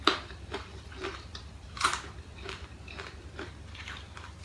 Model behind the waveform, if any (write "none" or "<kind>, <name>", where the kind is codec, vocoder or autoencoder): vocoder, BigVGAN v2